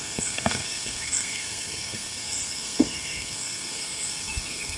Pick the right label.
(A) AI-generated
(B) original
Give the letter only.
A